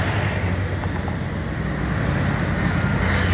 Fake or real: real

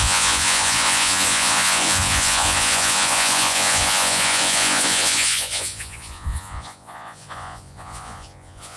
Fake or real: fake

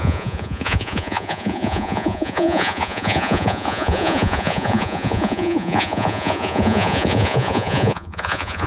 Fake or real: fake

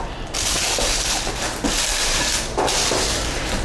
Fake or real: real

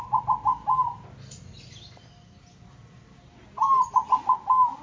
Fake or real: real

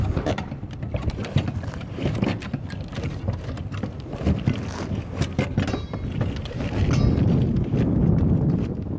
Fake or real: real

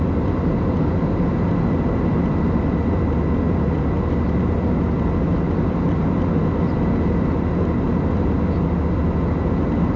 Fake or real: real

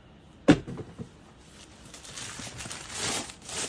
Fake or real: real